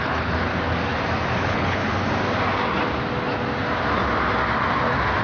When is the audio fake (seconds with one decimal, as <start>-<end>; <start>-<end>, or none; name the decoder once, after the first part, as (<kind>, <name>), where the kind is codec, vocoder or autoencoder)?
0.0-0.5 (codec, HILCodec); 1.4-1.8